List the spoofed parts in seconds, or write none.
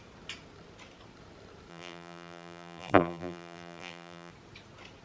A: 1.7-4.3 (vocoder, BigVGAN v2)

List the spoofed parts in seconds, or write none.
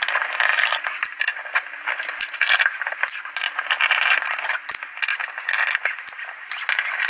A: 0.5-1.7 (vocoder, BigVGAN v2)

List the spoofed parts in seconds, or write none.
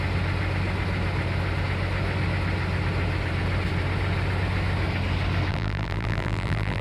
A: 5.5-6.8 (vocoder, BigVGAN v2)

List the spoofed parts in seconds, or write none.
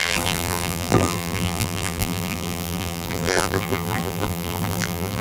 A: 0.0-5.2 (vocoder, BigVGAN v2)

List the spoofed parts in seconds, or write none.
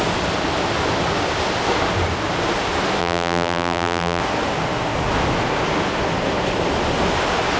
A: 3.0-4.2 (vocoder, BigVGAN v2)